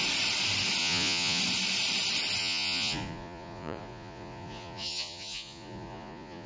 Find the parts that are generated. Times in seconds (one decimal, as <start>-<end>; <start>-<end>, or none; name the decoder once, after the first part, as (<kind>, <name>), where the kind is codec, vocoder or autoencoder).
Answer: 0.8-1.4 (vocoder, Vocos); 2.4-6.5